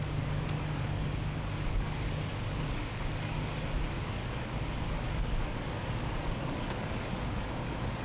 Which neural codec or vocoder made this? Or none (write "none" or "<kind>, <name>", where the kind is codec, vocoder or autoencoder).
codec, DAC